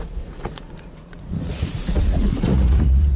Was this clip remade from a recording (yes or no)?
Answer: yes